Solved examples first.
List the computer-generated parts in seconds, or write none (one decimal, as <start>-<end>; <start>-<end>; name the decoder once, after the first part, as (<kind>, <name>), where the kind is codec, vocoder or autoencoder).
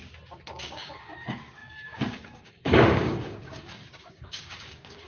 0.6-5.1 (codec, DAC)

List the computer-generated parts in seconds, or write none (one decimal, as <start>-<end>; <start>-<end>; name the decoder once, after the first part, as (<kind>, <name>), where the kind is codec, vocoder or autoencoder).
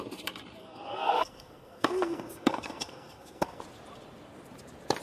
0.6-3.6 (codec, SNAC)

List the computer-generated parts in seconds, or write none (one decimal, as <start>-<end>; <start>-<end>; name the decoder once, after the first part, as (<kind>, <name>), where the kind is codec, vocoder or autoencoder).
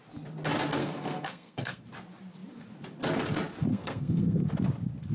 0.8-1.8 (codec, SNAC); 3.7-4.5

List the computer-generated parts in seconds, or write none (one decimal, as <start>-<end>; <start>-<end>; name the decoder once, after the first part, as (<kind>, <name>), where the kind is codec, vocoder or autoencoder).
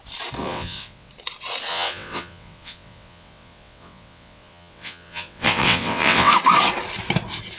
0.4-1.1 (vocoder, WaveNeXt); 1.7-6.3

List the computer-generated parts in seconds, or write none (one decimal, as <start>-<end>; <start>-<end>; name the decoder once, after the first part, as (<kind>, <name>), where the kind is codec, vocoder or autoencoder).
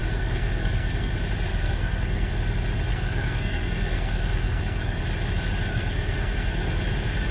0.0-1.1 (codec, SNAC); 1.5-2.3; 2.9-5.0; 5.7-6.7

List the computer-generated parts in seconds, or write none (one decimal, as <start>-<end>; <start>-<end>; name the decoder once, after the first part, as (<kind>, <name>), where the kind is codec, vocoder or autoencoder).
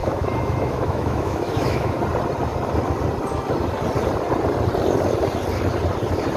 0.0-2.0 (autoencoder, DAC-VAE)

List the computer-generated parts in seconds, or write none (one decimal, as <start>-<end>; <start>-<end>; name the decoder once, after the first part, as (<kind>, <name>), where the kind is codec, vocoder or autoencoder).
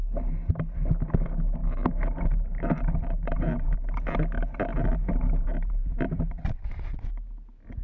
1.6-3.8 (vocoder, BigVGAN v2); 4.9-6.4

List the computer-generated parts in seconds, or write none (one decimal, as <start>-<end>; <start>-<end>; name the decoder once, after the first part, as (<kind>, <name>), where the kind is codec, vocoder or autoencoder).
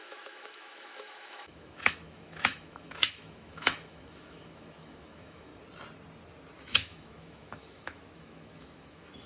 0.0-5.5 (autoencoder, DAC-VAE); 6.6-9.3